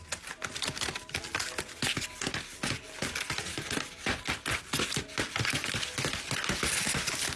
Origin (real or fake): real